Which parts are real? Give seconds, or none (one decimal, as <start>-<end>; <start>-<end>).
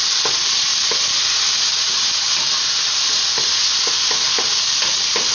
0.0-5.3